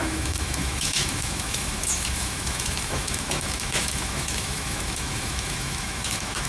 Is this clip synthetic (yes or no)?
yes